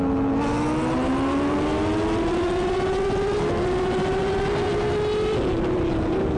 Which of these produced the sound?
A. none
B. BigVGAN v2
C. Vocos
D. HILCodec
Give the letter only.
A